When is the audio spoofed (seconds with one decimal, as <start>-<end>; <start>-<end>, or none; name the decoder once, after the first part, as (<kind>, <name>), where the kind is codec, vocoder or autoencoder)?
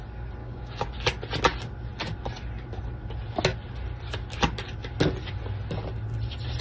0.4-0.9 (codec, DAC)